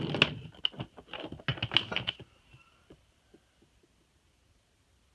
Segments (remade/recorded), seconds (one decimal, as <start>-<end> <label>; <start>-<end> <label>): 0.0-5.1 recorded